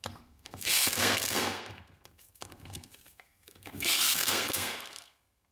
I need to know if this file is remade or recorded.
remade